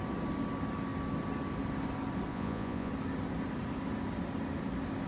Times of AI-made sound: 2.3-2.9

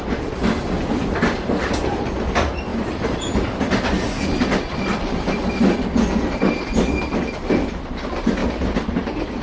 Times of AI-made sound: none

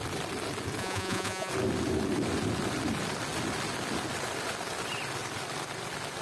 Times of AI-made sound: 0.8-1.5

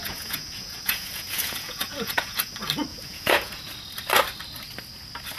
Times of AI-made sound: 0.0-2.5; 2.9-3.7

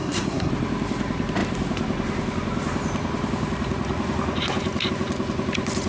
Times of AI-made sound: 0.0-0.5